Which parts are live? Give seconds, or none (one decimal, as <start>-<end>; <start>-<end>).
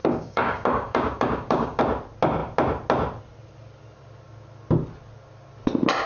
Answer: 1.8-6.1